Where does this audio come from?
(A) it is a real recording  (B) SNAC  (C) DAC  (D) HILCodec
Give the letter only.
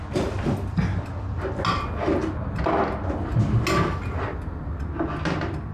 A